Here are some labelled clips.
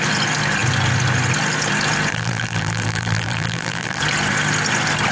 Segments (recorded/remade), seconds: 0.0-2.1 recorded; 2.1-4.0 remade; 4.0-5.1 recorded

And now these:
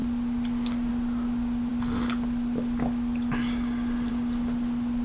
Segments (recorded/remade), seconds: 0.0-5.0 recorded

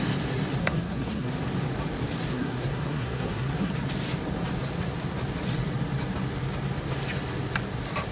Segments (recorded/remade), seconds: 0.0-0.6 recorded; 0.6-1.3 remade; 1.3-2.3 recorded; 2.3-3.7 remade; 3.7-8.1 recorded

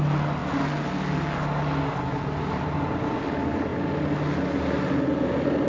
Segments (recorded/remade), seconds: 0.0-5.7 recorded